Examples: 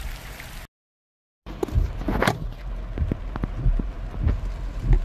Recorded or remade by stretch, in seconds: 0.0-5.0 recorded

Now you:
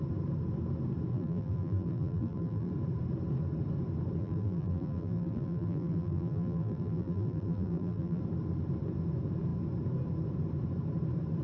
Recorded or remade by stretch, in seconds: 0.0-1.1 recorded; 1.1-2.7 remade; 2.7-4.2 recorded; 4.2-8.2 remade; 8.2-11.4 recorded

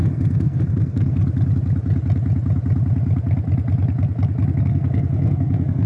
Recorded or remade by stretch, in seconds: 0.0-1.2 remade; 1.2-4.6 recorded; 4.6-5.9 remade

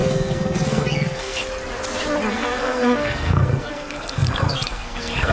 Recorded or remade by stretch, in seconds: 0.0-1.4 remade; 1.4-2.3 recorded; 2.3-5.3 remade

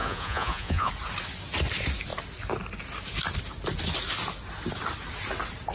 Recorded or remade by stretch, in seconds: 0.0-0.9 remade; 0.9-5.7 recorded

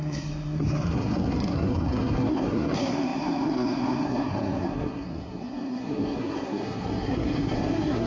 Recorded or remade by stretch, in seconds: 0.0-8.1 remade